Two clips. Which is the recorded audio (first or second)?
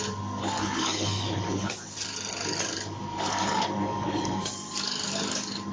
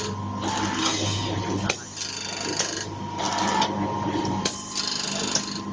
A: second